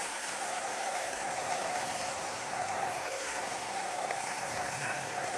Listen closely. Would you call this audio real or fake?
fake